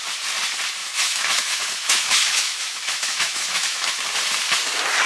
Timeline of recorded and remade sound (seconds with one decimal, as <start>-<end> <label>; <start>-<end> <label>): 0.0-0.8 recorded; 0.8-3.9 remade; 3.9-5.1 recorded